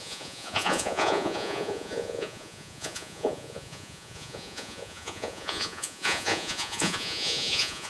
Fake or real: fake